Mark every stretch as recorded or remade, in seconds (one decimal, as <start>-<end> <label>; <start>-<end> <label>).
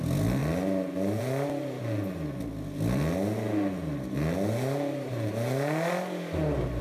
0.0-6.8 recorded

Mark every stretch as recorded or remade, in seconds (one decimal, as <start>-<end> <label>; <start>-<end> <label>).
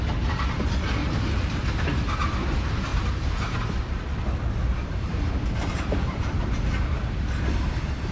0.0-1.0 recorded; 1.0-1.6 remade; 1.6-2.9 recorded; 2.9-4.0 remade; 4.0-4.7 recorded; 4.7-6.9 remade; 6.9-8.1 recorded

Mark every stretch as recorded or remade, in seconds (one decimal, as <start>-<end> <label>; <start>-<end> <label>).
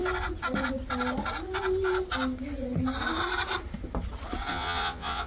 0.0-4.5 recorded; 4.5-5.3 remade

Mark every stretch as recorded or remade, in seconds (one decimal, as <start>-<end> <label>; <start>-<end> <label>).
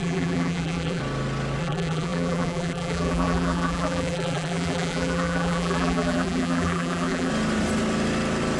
0.0-1.0 remade; 1.0-1.6 recorded; 1.6-7.3 remade; 7.3-8.6 recorded